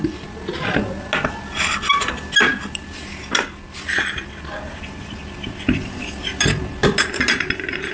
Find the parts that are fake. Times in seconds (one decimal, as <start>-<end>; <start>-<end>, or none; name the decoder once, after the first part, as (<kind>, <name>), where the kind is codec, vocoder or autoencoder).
none